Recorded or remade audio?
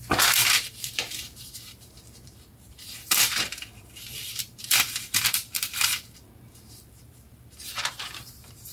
remade